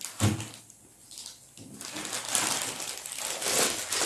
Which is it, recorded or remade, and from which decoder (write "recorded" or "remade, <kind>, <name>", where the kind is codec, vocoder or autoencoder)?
recorded